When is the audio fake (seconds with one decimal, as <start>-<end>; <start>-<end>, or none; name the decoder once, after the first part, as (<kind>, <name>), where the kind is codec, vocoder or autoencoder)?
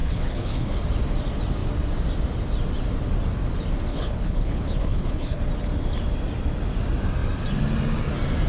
0.0-0.8 (codec, HILCodec); 3.9-5.4